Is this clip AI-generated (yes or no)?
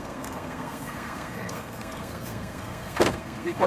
yes